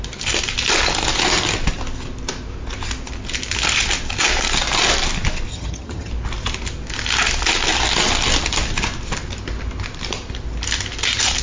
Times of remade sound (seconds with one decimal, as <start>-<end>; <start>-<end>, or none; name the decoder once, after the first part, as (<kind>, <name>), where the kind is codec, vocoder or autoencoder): 5.5-6.1 (vocoder, HiFi-GAN)